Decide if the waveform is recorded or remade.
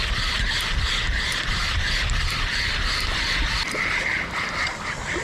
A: recorded